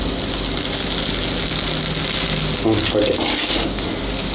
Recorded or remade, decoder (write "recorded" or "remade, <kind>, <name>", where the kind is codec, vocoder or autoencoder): recorded